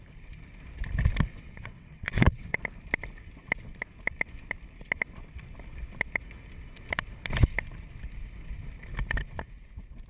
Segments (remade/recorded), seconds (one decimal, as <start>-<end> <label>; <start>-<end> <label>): 0.0-1.3 recorded; 1.3-2.6 remade; 2.6-10.1 recorded

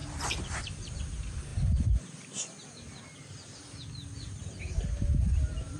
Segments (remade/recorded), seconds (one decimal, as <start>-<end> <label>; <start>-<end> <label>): 0.0-0.9 remade; 0.9-5.8 recorded

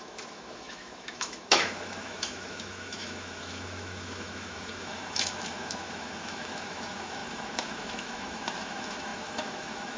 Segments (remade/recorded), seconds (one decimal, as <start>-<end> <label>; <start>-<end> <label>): 0.0-10.0 remade